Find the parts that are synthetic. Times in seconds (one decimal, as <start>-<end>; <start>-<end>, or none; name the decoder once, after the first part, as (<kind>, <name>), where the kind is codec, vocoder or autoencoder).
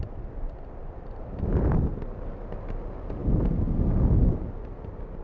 none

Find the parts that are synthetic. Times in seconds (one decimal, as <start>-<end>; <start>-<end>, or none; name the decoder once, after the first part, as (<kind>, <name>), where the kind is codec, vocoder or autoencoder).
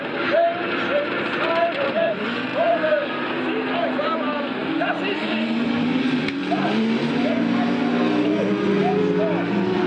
none